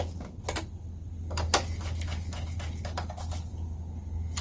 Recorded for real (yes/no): yes